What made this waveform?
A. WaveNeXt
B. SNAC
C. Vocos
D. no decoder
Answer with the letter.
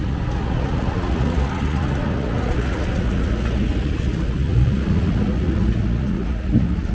C